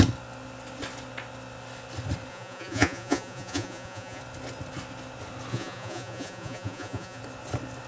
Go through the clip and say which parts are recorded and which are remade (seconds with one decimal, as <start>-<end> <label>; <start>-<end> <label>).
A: 0.0-2.3 recorded; 2.3-4.2 remade; 4.2-5.5 recorded; 5.5-7.2 remade; 7.2-7.9 recorded